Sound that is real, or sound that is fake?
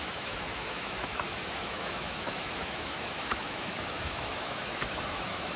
fake